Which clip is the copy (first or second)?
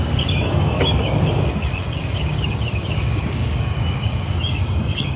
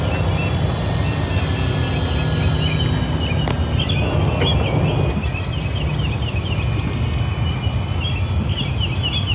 first